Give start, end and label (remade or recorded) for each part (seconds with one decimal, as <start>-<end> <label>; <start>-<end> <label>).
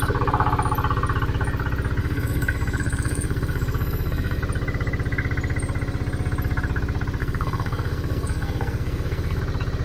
0.0-2.0 recorded; 2.0-4.4 remade; 4.4-7.2 recorded; 7.2-9.4 remade; 9.4-9.8 recorded